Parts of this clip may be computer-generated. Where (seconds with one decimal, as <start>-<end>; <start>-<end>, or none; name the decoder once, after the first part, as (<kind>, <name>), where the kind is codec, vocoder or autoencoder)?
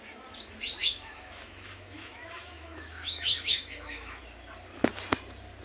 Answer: 0.8-4.2 (autoencoder, DAC-VAE)